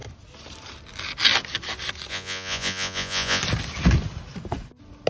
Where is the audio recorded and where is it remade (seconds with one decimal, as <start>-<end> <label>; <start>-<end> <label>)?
0.0-2.1 recorded; 2.1-3.4 remade; 3.4-5.1 recorded